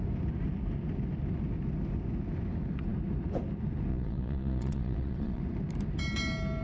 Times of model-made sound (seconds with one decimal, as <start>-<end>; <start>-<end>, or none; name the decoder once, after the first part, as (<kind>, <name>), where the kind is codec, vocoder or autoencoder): 3.9-5.4 (vocoder, Vocos)